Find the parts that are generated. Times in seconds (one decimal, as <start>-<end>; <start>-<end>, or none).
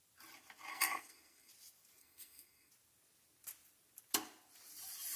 0.7-1.5; 2.0-2.7